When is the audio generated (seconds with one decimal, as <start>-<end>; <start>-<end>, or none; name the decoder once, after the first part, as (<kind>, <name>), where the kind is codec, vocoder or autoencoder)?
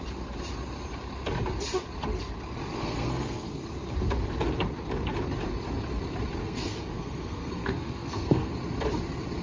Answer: 2.8-3.5 (codec, SNAC); 6.4-8.5